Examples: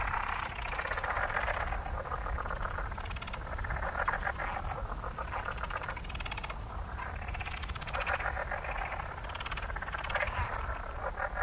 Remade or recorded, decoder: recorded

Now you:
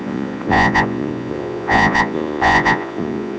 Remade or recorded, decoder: remade, vocoder, Vocos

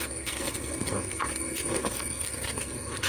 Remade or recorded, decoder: remade, codec, SNAC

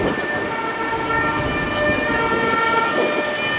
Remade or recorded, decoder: recorded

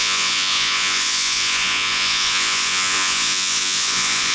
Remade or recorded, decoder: remade, vocoder, Vocos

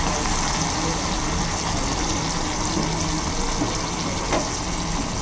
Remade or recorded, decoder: recorded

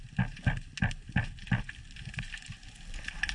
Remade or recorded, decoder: recorded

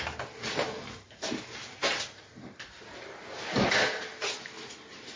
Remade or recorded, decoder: recorded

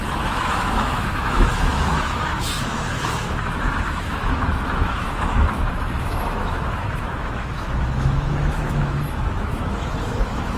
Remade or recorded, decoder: remade, autoencoder, DAC-VAE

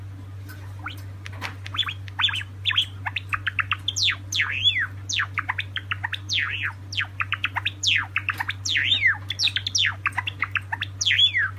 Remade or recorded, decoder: recorded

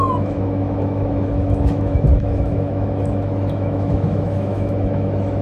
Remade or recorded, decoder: remade, autoencoder, DAC-VAE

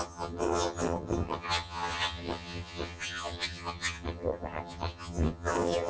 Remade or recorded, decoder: remade, vocoder, HiFi-GAN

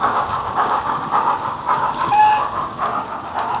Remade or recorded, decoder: remade, codec, DAC